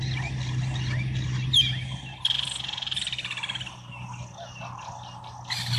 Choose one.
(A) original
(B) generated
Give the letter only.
A